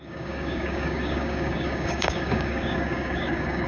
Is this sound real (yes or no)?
no